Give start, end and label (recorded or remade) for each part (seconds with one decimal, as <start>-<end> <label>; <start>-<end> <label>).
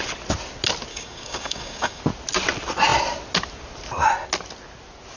0.0-0.9 recorded; 0.9-2.0 remade; 2.0-5.2 recorded